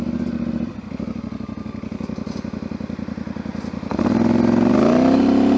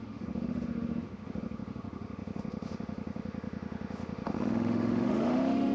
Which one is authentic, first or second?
first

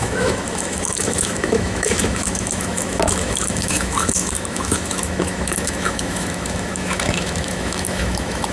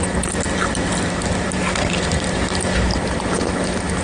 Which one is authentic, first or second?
second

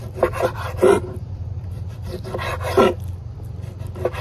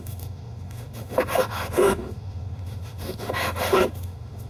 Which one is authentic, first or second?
first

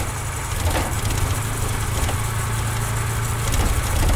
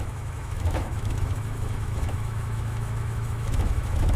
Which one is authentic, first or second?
first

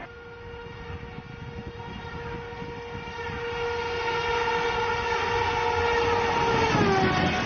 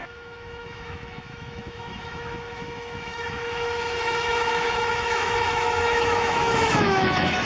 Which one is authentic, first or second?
first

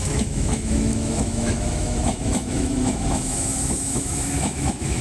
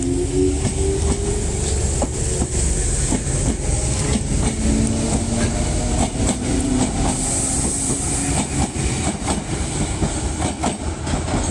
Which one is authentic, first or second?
second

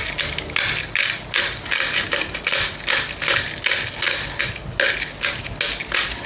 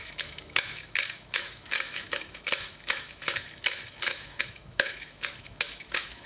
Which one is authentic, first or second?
first